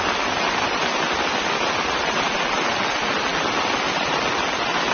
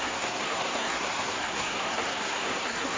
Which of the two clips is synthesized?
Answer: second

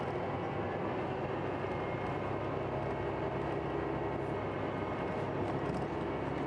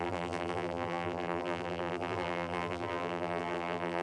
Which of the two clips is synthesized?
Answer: second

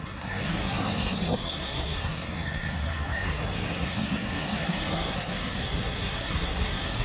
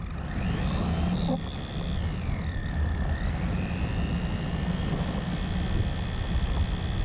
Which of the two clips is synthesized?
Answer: first